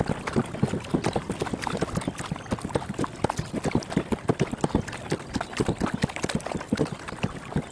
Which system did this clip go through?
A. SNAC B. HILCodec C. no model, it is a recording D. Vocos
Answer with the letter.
C